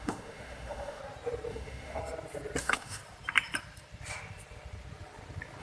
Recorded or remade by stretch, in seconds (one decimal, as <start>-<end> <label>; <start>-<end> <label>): 0.0-1.0 remade; 1.0-1.5 recorded; 1.5-2.0 remade; 2.0-2.6 recorded; 2.6-3.0 remade; 3.0-5.6 recorded